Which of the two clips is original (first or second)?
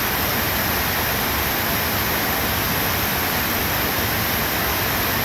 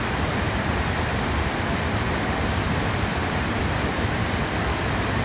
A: first